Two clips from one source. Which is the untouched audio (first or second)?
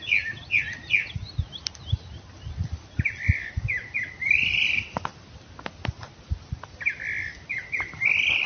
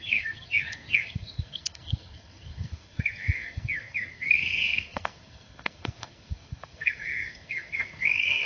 first